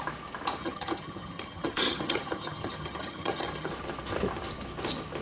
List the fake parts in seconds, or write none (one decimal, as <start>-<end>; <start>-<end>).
0.6-3.7